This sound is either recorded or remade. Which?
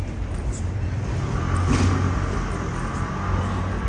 recorded